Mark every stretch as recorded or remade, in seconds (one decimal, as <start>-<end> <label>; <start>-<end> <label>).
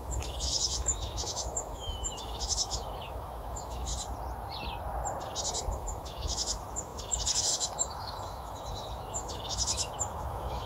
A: 0.0-3.9 remade; 3.9-5.7 recorded; 5.7-10.7 remade